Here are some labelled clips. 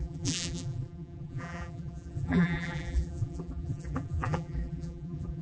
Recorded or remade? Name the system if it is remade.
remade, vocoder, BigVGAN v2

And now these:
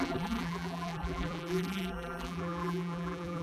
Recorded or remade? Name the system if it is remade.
remade, vocoder, BigVGAN v2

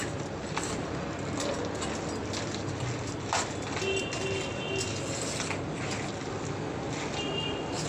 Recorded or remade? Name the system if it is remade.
recorded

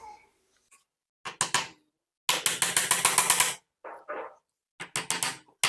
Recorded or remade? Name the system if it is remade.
recorded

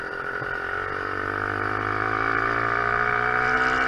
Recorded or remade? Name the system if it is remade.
recorded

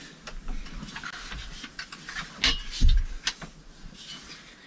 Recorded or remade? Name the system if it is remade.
recorded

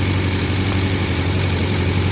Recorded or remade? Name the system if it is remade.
remade, vocoder, BigVGAN v2